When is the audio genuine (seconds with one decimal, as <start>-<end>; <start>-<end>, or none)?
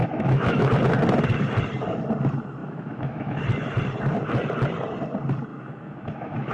0.7-2.6; 3.4-5.5